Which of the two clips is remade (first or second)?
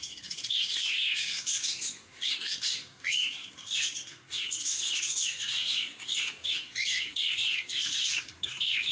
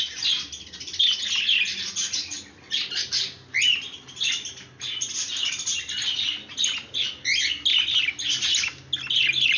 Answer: first